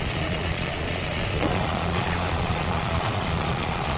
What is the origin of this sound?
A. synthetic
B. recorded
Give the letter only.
A